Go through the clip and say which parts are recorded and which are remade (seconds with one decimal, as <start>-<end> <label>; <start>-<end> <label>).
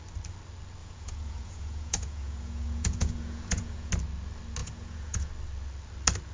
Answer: 0.0-0.8 recorded; 0.8-3.9 remade; 3.9-4.6 recorded; 4.6-5.3 remade; 5.3-6.3 recorded